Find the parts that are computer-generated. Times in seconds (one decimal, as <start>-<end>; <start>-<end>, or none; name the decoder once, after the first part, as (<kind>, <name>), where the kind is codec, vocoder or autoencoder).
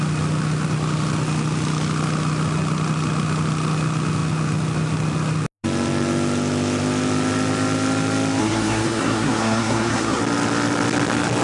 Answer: 8.4-10.2 (codec, SNAC)